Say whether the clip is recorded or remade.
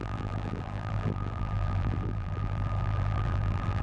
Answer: remade